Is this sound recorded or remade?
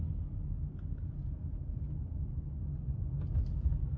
recorded